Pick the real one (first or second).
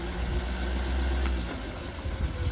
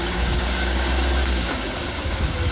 first